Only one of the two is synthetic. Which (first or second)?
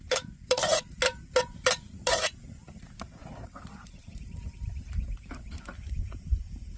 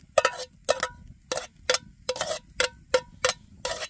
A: first